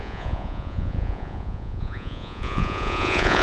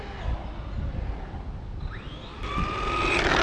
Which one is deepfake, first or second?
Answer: first